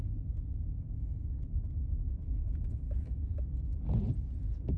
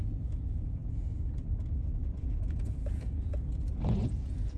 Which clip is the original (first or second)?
first